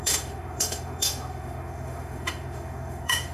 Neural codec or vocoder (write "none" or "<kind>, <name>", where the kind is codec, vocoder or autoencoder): autoencoder, DAC-VAE